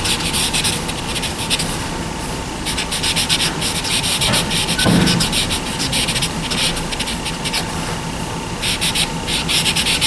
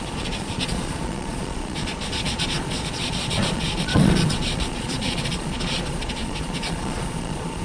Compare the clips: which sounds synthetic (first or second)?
second